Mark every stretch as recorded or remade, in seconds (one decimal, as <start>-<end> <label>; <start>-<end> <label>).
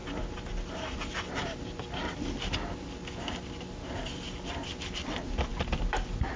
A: 0.0-6.4 recorded